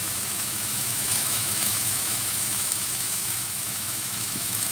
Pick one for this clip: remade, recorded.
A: remade